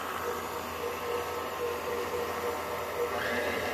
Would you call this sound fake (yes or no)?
no